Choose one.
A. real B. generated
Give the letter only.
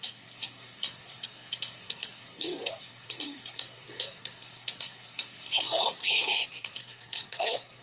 B